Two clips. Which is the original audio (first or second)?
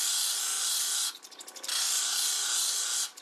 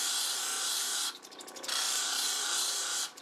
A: first